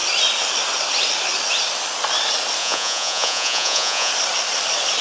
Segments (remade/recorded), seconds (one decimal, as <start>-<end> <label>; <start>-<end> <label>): 0.0-2.6 recorded; 2.6-4.1 remade; 4.1-5.0 recorded